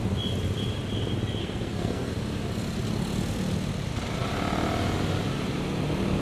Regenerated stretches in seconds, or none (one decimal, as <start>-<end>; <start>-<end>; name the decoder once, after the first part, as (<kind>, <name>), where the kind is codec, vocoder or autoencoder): 1.4-2.1 (codec, SNAC)